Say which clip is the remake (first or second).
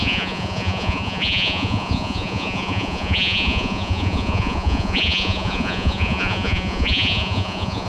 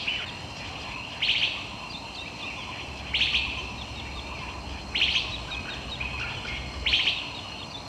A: first